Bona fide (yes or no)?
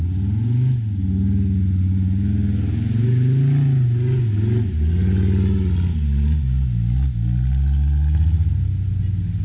yes